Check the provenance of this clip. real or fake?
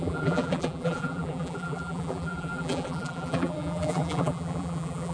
fake